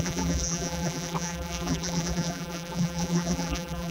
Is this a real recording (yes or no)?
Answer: no